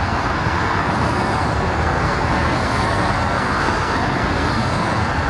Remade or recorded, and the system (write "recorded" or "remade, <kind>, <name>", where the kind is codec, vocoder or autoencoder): remade, codec, SNAC